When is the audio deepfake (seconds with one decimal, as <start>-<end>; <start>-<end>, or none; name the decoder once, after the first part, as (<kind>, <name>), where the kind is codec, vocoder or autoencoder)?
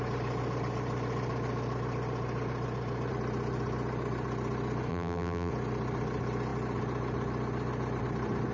4.9-5.5 (vocoder, BigVGAN v2)